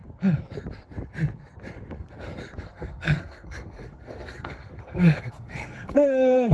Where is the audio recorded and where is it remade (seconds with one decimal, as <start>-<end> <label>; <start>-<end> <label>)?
0.0-2.6 recorded; 2.6-6.5 remade